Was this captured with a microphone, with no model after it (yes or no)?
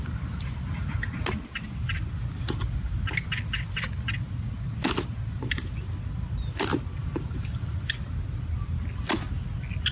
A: yes